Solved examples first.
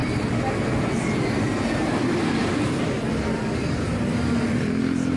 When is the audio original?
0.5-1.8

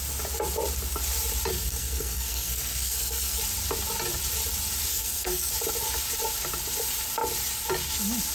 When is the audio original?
0.0-1.5; 3.4-4.9; 5.5-8.3

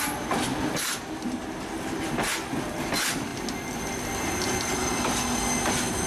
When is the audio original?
0.0-6.1

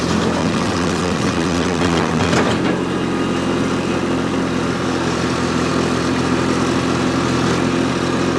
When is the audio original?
0.0-0.4; 2.3-8.4

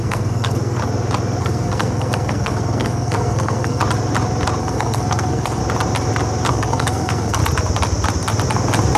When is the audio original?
0.8-1.4; 3.8-4.6; 5.6-6.5; 7.4-9.0